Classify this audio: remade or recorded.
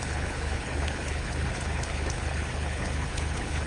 remade